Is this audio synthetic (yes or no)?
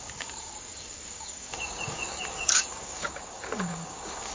yes